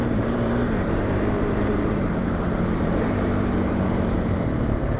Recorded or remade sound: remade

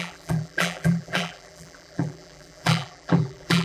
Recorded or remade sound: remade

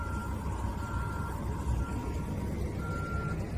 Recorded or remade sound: recorded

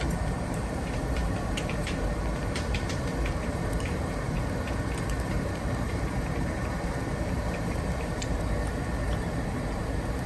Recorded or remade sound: remade